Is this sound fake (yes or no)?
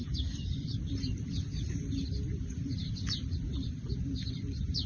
no